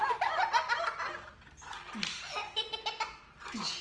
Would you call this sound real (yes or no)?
yes